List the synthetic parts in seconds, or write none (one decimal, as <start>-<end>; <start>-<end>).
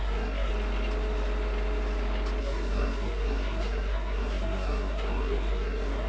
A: 0.0-0.5; 2.4-6.1